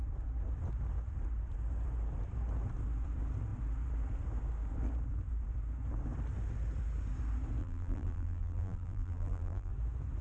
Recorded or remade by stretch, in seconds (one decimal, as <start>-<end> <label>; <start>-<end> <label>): 0.0-7.6 recorded; 7.6-9.7 remade; 9.7-10.2 recorded